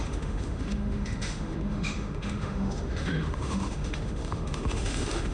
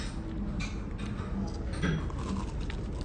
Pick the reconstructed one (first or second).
first